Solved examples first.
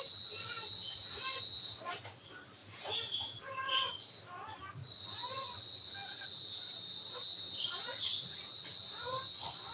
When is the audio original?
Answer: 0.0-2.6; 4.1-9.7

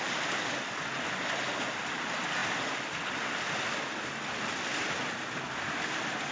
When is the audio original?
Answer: 0.0-6.3

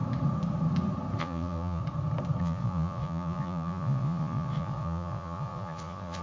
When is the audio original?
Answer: 0.0-1.2; 1.8-2.4

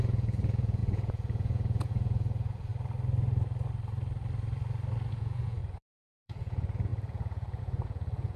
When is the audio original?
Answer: 2.7-5.1

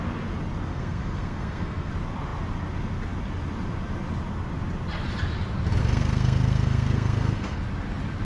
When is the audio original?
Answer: 0.0-0.7; 1.9-5.8; 7.6-8.2

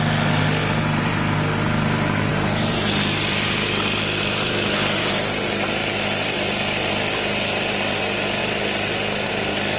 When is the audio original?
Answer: 0.0-2.7; 5.0-9.8